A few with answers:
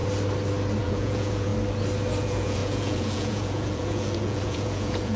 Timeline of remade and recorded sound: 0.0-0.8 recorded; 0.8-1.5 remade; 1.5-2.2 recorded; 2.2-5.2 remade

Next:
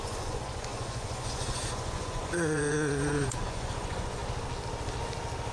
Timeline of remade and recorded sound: 0.0-4.2 remade; 4.2-5.5 recorded